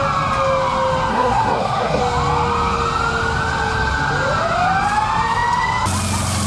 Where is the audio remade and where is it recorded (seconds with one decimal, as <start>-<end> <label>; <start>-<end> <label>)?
0.0-1.1 recorded; 1.1-2.0 remade; 2.0-6.5 recorded